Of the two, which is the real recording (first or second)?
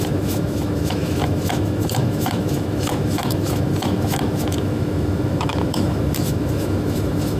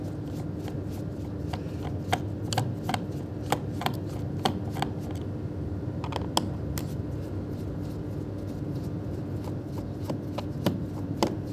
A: second